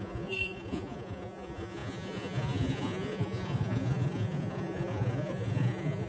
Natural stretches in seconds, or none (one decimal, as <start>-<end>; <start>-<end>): none